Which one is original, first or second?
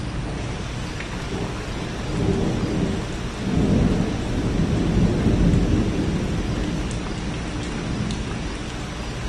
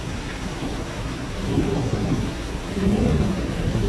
first